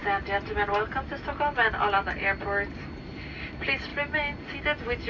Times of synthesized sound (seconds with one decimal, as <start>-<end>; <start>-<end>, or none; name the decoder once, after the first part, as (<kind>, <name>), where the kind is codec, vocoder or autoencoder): none